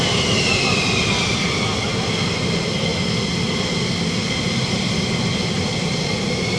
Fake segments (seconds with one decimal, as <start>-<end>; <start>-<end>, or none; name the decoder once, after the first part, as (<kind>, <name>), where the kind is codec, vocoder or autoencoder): none